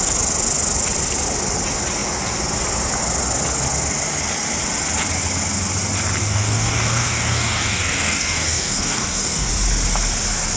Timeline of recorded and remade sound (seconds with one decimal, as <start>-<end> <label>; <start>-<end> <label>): 0.0-6.2 recorded; 6.2-9.5 remade; 9.5-10.6 recorded